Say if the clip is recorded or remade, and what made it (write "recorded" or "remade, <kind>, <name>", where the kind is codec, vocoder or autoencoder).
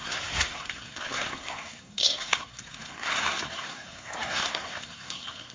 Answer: remade, codec, SNAC